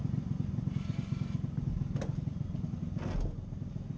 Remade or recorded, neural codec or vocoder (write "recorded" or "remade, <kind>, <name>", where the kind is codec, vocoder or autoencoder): recorded